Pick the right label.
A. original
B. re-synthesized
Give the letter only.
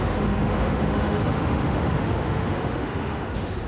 B